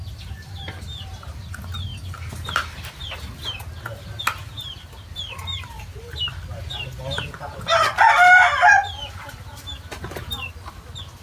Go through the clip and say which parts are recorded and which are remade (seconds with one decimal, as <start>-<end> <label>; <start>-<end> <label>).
0.0-11.2 recorded